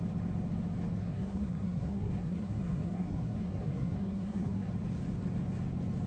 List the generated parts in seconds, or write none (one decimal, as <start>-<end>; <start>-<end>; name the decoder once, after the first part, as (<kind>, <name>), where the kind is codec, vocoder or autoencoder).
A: 1.0-4.7 (codec, SNAC)